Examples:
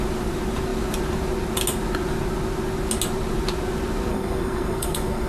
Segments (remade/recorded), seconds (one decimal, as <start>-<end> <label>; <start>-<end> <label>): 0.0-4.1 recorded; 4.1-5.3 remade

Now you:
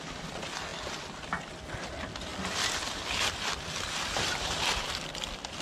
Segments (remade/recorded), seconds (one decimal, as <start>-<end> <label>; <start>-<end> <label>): 0.0-5.6 recorded

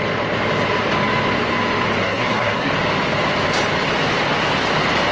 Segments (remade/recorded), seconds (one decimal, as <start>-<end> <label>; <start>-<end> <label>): 0.0-2.0 recorded; 2.0-2.7 remade; 2.7-5.1 recorded

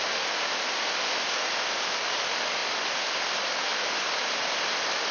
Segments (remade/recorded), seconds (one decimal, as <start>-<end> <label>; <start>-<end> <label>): 0.0-3.7 recorded; 3.7-4.2 remade; 4.2-5.1 recorded